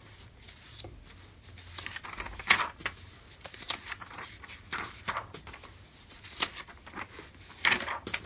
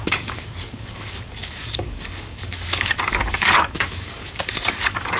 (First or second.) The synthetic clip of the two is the second